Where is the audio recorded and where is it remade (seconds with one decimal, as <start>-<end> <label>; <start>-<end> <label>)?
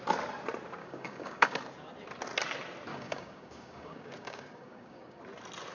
0.0-0.8 recorded; 0.8-1.6 remade; 1.6-2.9 recorded; 2.9-5.2 remade; 5.2-5.7 recorded